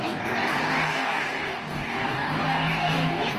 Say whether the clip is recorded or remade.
remade